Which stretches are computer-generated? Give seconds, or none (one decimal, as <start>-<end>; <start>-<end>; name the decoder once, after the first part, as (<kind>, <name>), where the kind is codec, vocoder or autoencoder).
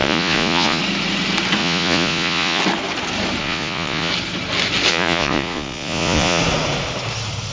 0.0-0.8 (vocoder, Vocos); 1.6-2.6; 3.4-4.1; 4.9-6.4